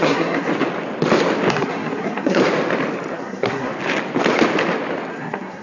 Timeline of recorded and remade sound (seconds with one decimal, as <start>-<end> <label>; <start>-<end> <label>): 0.0-0.5 remade; 0.5-1.5 recorded; 1.5-2.4 remade; 2.4-3.1 recorded; 3.1-3.7 remade; 3.7-5.1 recorded; 5.1-5.6 remade